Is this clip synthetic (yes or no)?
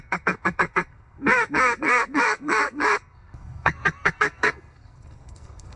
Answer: yes